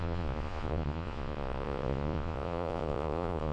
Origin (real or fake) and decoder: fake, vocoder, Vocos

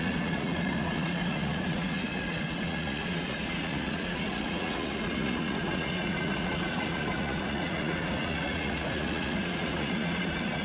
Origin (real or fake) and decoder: fake, vocoder, Vocos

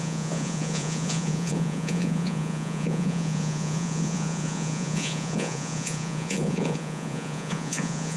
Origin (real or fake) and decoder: fake, vocoder, Vocos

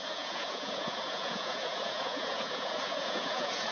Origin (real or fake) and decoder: fake, vocoder, Vocos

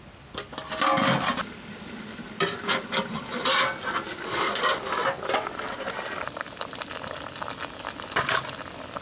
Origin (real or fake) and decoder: real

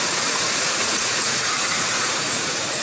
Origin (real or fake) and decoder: fake, vocoder, Vocos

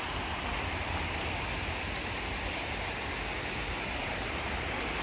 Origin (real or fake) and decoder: real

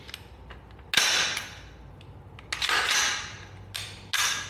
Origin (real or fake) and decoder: real